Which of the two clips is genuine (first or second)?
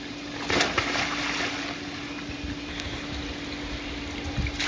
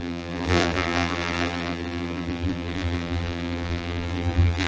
first